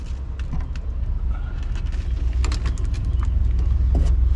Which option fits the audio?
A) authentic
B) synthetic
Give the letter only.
A